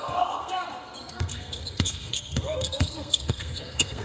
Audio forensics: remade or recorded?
remade